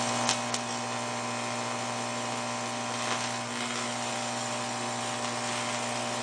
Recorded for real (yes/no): yes